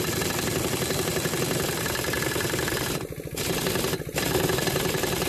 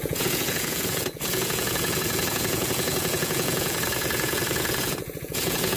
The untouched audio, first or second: first